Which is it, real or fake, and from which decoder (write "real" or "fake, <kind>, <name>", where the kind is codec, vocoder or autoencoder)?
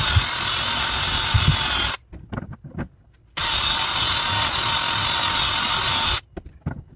real